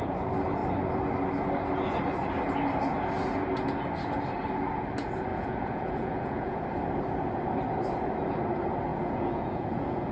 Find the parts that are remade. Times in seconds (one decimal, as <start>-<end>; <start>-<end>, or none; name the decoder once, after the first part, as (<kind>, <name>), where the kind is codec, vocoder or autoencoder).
5.3-6.6 (vocoder, Vocos); 8.9-10.1